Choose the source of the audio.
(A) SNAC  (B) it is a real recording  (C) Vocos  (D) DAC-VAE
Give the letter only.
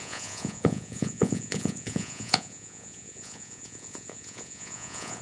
C